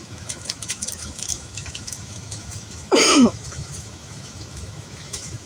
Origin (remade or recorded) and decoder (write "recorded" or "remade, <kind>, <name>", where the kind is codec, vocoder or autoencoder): remade, autoencoder, DAC-VAE